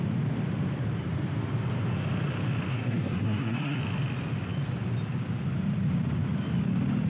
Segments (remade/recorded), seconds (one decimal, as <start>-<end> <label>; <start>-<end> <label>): 0.0-2.7 recorded; 2.7-3.8 remade; 3.8-7.1 recorded